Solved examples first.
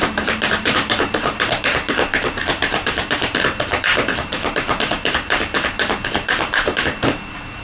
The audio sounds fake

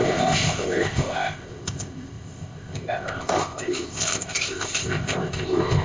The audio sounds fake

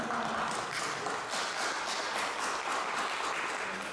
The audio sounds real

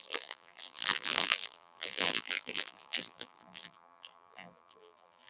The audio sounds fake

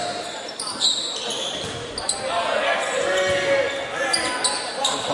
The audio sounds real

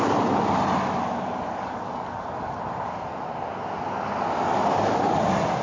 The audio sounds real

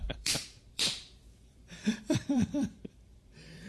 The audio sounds fake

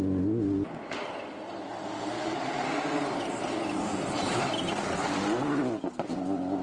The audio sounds real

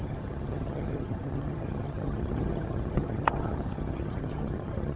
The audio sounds fake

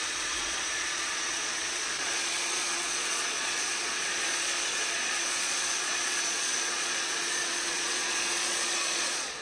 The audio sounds fake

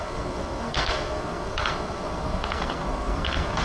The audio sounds fake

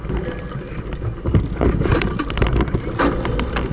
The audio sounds real